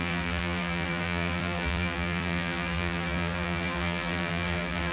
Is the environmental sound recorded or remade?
remade